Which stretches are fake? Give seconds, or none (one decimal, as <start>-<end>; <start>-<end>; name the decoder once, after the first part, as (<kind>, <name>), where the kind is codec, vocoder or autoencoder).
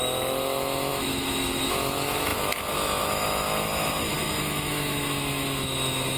0.0-6.2 (autoencoder, DAC-VAE)